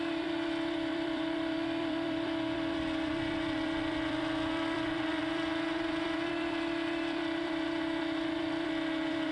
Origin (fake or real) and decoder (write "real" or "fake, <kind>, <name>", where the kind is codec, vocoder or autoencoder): fake, vocoder, BigVGAN v2